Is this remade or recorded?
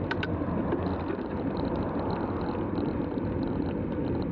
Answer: remade